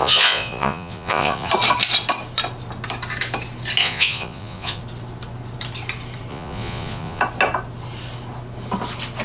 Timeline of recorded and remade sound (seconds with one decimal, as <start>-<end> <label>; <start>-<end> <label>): 0.0-1.5 remade; 1.5-3.8 recorded; 3.8-4.8 remade; 4.8-6.3 recorded; 6.3-7.2 remade; 7.2-9.2 recorded